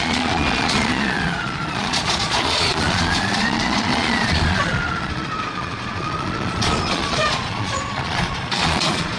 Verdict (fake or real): fake